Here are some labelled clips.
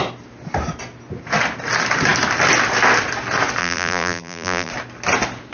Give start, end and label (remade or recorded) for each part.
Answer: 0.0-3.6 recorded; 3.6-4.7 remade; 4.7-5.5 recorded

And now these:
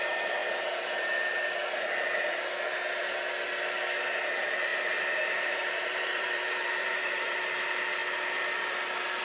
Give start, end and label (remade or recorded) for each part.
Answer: 0.0-4.7 recorded; 4.7-7.4 remade; 7.4-9.2 recorded

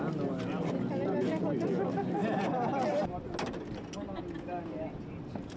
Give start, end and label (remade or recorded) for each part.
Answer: 0.0-2.2 recorded; 2.2-3.1 remade; 3.1-5.6 recorded

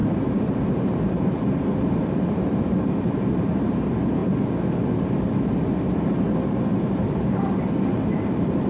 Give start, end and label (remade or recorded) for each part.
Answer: 0.0-4.2 remade; 4.2-6.0 recorded; 6.0-8.7 remade

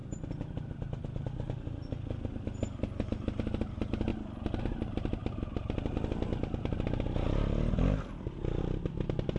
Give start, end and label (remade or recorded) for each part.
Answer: 0.0-1.1 remade; 1.1-9.4 recorded

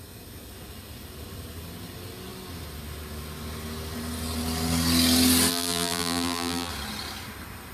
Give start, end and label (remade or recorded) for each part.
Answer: 0.0-5.5 recorded; 5.5-6.7 remade; 6.7-7.7 recorded

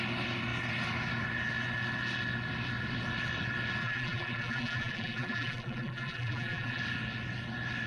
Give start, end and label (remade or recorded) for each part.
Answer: 0.0-3.8 recorded; 3.8-6.8 remade; 6.8-7.9 recorded

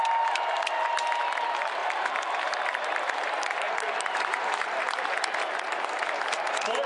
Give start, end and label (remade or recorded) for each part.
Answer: 0.0-1.8 recorded; 1.8-5.2 remade; 5.2-6.9 recorded